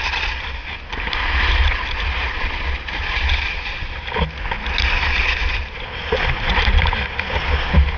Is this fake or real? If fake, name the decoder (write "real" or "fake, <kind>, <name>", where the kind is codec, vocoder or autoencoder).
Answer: real